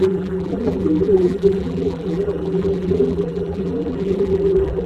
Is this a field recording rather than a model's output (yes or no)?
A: no